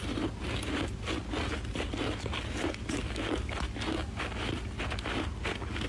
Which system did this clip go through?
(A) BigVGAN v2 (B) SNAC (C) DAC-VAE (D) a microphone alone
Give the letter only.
D